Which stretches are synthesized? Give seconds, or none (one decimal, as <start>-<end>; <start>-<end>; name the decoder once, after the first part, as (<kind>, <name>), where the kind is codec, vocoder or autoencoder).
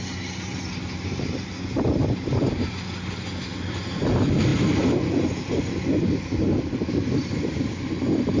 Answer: none